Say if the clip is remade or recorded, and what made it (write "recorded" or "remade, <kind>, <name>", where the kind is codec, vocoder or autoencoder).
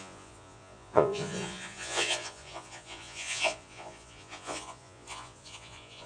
remade, vocoder, Vocos